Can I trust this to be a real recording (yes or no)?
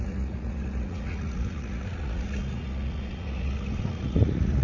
no